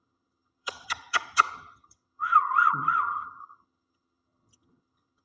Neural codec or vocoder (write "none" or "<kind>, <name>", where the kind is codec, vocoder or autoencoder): vocoder, HiFi-GAN